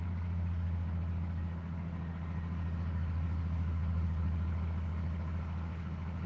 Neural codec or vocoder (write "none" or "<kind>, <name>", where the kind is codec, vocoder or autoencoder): codec, DAC